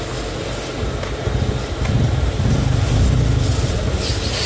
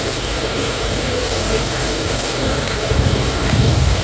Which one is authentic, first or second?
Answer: first